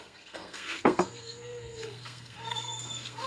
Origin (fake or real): fake